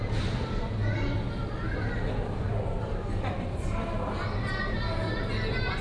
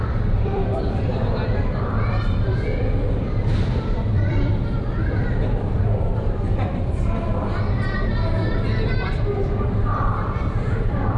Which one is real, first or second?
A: first